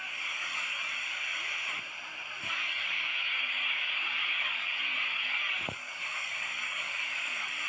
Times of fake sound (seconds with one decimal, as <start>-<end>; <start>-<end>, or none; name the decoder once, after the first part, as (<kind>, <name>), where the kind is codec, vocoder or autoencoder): 0.0-1.4 (codec, DAC); 2.4-7.7